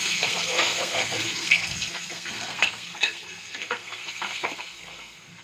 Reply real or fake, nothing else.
fake